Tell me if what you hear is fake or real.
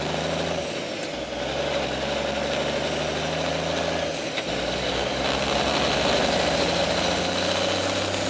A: real